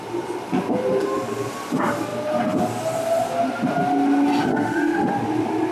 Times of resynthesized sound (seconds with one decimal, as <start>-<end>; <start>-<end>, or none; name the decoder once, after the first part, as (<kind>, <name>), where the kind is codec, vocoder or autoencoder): 4.5-5.1 (autoencoder, DAC-VAE)